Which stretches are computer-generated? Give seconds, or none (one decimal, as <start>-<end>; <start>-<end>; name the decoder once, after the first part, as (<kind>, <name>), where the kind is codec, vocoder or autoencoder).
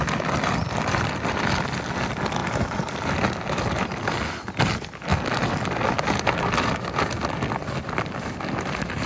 none